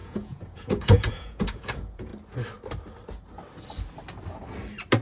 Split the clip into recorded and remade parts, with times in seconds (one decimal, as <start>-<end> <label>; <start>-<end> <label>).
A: 0.0-2.1 remade; 2.1-5.0 recorded